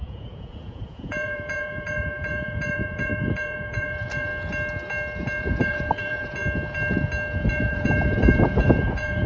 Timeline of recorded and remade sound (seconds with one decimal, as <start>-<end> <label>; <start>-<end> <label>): 0.0-4.3 remade; 4.3-5.4 recorded; 5.4-6.4 remade; 6.4-7.5 recorded; 7.5-9.3 remade